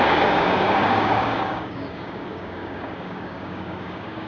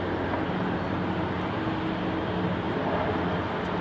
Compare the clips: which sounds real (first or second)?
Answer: second